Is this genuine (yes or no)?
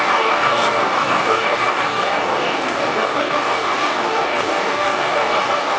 no